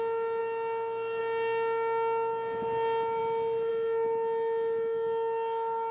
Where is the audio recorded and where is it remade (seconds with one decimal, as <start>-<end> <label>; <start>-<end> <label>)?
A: 0.0-5.9 recorded